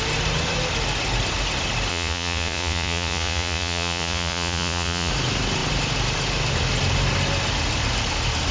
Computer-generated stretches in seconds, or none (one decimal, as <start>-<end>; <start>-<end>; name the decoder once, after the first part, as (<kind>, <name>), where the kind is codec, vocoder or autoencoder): 1.9-5.1 (vocoder, Vocos)